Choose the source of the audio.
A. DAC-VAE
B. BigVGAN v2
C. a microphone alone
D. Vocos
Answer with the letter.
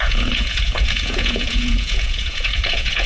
D